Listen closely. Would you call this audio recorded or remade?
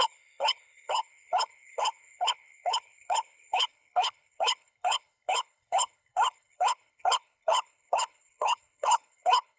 remade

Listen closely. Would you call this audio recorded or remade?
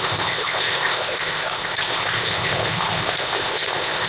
remade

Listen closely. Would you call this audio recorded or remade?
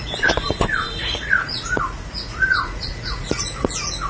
remade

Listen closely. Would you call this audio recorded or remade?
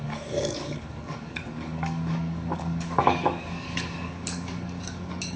remade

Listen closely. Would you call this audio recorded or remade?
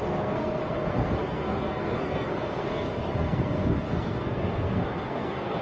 remade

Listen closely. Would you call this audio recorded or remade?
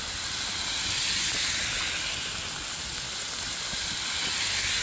recorded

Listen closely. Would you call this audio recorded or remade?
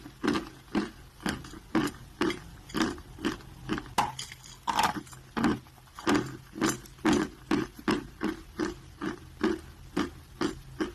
recorded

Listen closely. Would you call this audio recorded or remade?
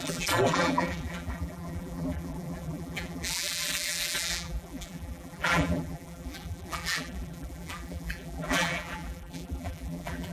remade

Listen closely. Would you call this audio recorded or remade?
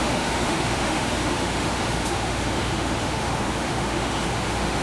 remade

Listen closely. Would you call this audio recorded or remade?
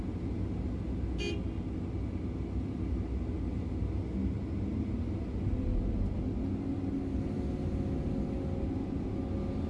recorded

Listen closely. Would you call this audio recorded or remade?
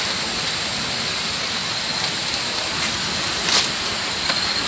recorded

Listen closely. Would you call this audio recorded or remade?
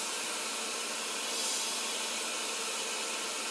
recorded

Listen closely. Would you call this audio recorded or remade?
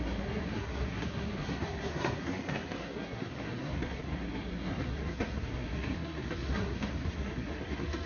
remade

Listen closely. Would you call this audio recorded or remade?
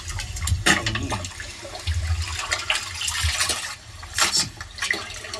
recorded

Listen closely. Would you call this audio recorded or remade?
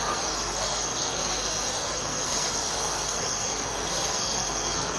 remade